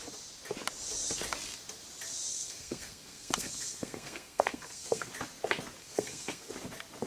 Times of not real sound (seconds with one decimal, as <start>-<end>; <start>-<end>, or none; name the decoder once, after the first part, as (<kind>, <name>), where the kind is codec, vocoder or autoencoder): 2.3-5.1 (codec, SNAC); 5.8-6.5